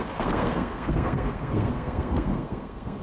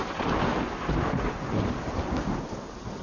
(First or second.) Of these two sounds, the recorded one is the second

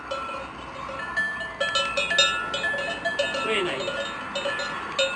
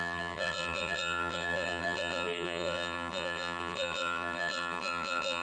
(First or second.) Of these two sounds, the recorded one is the first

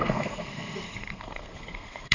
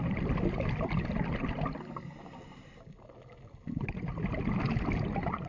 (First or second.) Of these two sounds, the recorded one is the second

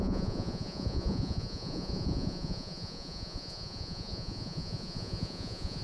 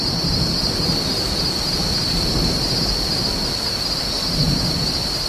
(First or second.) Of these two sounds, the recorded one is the second